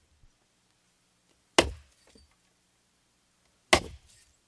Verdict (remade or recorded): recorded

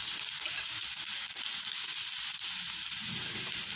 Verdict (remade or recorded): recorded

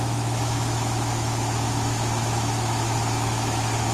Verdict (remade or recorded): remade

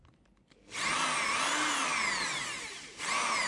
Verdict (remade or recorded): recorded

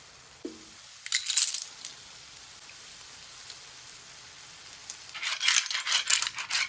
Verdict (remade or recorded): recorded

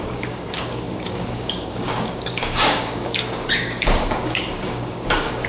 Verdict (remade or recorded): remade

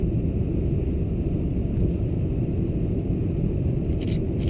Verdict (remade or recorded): recorded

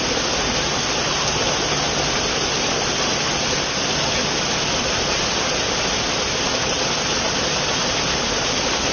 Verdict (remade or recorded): recorded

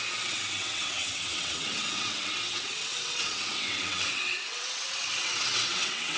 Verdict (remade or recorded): remade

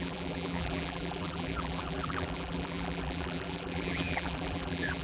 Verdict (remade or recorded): remade